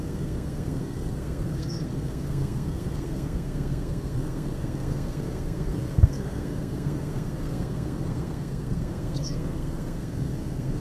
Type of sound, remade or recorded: remade